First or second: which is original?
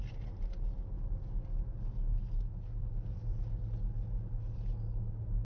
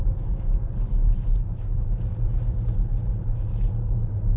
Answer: first